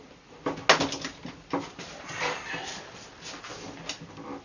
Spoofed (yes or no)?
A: no